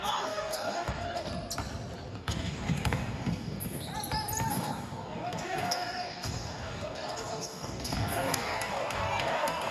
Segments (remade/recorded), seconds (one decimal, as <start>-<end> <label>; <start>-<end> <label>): 0.0-1.3 remade; 1.3-2.1 recorded; 2.1-3.9 remade; 3.9-4.5 recorded; 4.5-9.7 remade